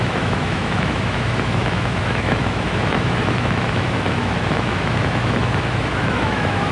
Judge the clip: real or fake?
fake